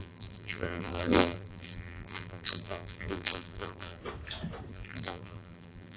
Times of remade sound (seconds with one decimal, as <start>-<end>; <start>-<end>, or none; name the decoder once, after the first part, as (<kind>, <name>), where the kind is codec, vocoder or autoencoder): 0.0-4.0 (vocoder, BigVGAN v2); 4.7-6.0